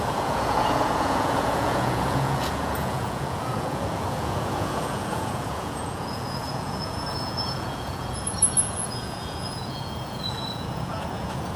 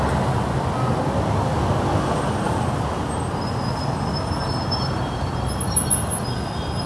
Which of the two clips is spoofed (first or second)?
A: first